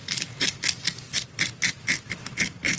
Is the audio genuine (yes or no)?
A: yes